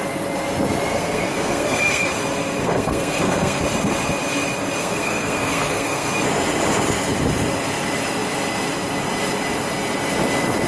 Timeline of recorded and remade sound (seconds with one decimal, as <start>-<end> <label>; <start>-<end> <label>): 0.0-0.9 recorded; 0.9-2.1 remade; 2.1-2.6 recorded; 2.6-3.6 remade; 3.6-4.8 recorded; 4.8-6.1 remade; 6.1-10.7 recorded